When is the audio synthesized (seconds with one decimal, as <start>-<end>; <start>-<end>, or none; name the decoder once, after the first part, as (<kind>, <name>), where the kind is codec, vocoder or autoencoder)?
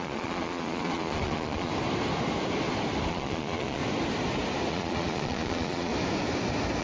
0.0-1.7 (vocoder, Vocos); 3.1-3.8; 4.7-5.9